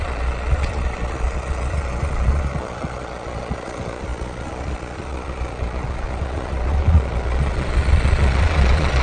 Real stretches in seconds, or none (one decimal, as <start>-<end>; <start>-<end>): none

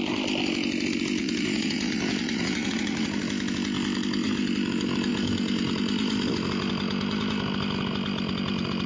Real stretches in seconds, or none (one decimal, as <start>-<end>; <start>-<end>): 0.0-1.2; 3.2-8.9

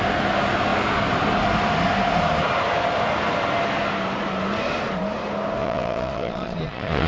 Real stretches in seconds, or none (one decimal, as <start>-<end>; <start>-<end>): 0.0-5.6

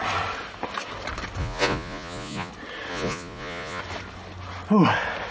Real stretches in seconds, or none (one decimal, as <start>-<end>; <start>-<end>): 0.0-1.4; 2.5-2.9; 3.8-5.3